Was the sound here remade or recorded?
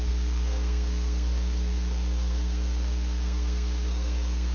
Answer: remade